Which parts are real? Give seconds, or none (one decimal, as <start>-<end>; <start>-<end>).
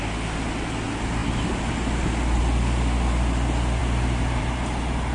0.0-5.1